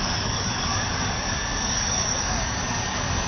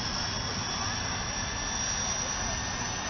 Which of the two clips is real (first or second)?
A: second